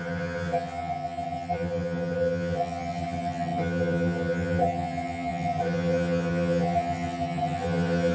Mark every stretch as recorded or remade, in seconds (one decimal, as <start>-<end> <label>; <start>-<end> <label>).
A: 0.0-8.1 remade